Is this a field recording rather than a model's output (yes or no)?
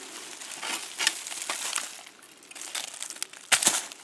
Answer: yes